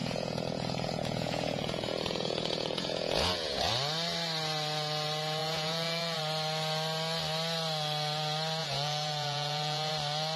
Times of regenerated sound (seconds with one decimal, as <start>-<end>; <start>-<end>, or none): 0.0-3.7; 5.4-6.2; 8.6-9.9